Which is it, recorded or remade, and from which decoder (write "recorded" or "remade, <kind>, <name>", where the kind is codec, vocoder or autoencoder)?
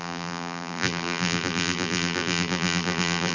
remade, vocoder, BigVGAN v2